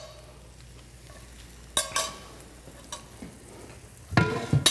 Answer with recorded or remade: recorded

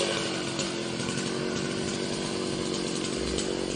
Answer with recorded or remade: recorded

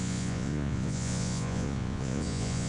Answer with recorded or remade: remade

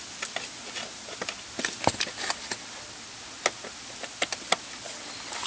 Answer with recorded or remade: recorded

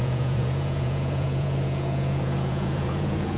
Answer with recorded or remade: remade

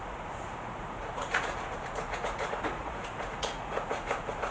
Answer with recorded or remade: remade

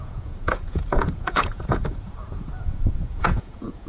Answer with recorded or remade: remade